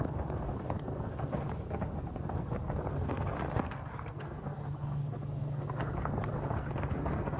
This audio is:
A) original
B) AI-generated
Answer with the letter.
B